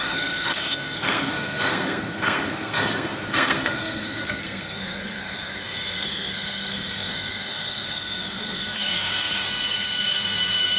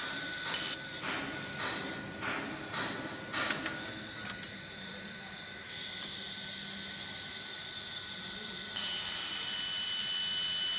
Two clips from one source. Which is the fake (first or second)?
first